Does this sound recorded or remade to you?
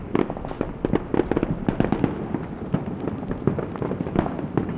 recorded